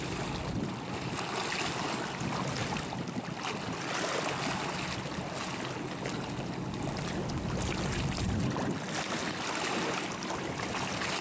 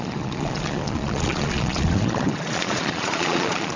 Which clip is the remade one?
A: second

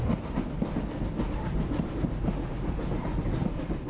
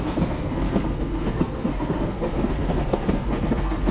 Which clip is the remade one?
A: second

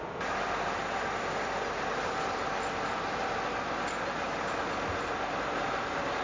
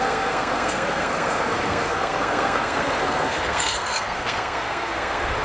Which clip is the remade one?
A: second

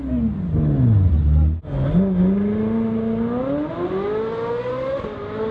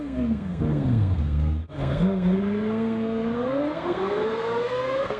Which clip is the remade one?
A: second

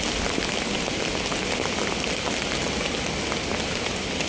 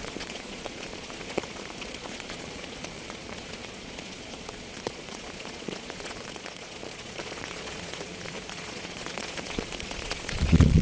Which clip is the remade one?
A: second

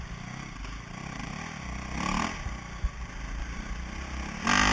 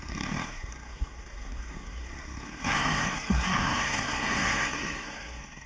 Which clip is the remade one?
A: second